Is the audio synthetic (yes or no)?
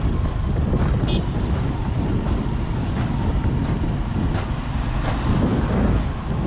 no